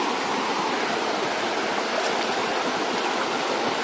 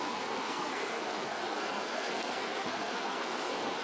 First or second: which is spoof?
second